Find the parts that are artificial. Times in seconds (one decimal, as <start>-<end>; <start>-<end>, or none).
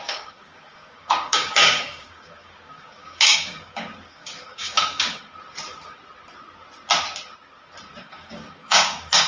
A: 0.0-5.2; 8.0-9.3